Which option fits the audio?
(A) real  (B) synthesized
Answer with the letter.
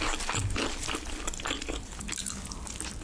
A